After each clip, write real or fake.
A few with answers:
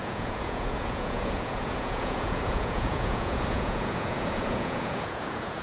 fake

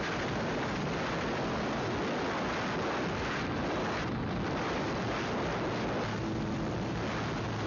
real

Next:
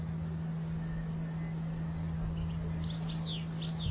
real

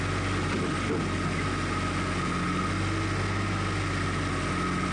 real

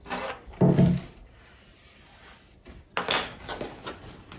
real